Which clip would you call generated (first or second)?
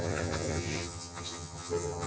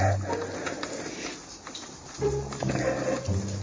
first